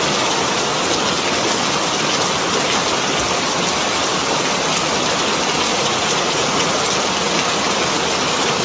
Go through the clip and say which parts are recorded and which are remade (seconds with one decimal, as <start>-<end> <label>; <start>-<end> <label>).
0.0-5.7 recorded; 5.7-6.8 remade; 6.8-8.6 recorded

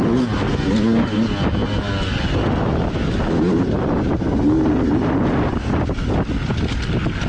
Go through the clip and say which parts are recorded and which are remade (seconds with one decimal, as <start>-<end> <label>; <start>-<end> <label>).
0.0-7.3 recorded

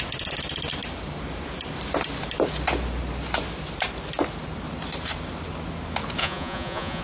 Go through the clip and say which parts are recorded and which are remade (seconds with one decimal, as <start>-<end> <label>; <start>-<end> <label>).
0.0-6.2 recorded; 6.2-7.0 remade

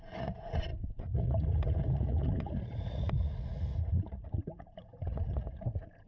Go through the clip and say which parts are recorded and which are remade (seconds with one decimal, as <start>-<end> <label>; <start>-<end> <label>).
0.0-6.1 remade

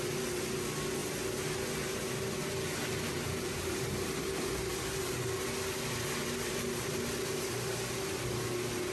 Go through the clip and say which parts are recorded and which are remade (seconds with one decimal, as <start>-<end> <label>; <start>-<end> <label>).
0.0-8.9 recorded